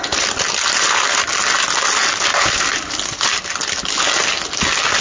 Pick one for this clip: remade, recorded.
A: recorded